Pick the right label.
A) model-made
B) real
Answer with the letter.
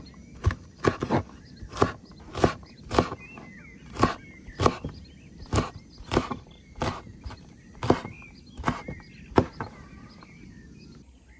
B